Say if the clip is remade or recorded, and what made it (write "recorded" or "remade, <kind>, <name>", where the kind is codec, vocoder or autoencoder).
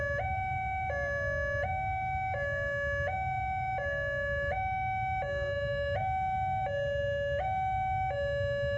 recorded